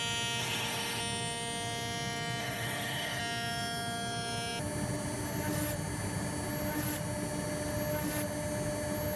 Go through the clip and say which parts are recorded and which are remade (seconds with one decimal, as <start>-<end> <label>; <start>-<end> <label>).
0.0-0.4 recorded; 0.4-1.0 remade; 1.0-2.4 recorded; 2.4-3.2 remade; 3.2-9.2 recorded